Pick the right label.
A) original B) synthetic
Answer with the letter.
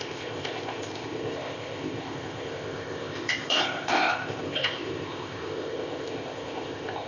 B